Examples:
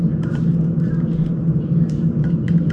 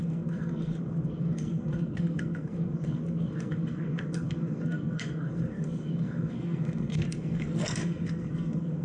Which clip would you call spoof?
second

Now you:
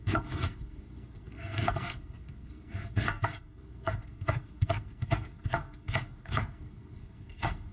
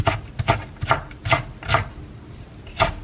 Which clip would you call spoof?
first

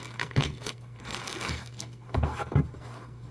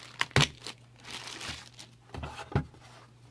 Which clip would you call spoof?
first